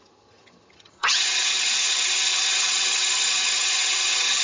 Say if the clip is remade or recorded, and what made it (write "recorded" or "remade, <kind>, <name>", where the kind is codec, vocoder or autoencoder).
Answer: remade, vocoder, HiFi-GAN